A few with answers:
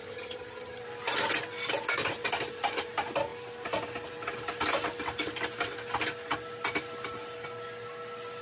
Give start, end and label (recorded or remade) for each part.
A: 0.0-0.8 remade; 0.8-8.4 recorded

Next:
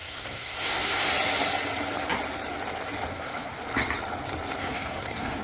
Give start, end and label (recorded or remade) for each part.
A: 0.0-1.1 remade; 1.1-3.1 recorded; 3.1-3.6 remade; 3.6-4.6 recorded; 4.6-5.4 remade

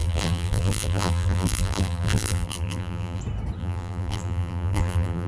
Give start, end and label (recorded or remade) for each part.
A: 0.0-3.2 remade; 3.2-3.6 recorded; 3.6-5.3 remade

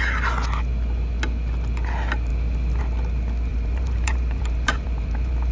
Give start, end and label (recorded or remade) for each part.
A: 0.0-3.5 recorded; 3.5-5.5 remade

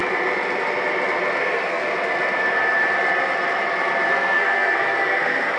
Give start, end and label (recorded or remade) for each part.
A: 0.0-1.4 recorded; 1.4-1.8 remade; 1.8-4.1 recorded; 4.1-5.6 remade